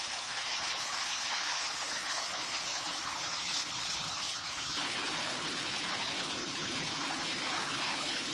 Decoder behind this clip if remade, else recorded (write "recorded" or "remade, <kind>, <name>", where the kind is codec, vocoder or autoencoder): remade, codec, HILCodec